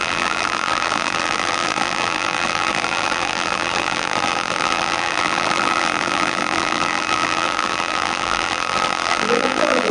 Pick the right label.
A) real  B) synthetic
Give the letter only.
B